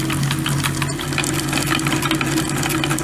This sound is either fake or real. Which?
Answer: real